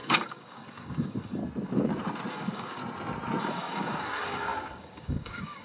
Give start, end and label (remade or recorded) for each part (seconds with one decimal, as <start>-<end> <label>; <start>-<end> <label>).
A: 0.0-1.4 remade; 1.4-2.3 recorded; 2.3-2.8 remade; 2.8-3.4 recorded; 3.4-5.6 remade